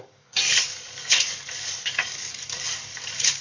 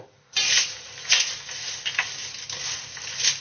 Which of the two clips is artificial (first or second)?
first